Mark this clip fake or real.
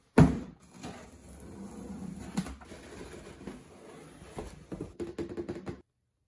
real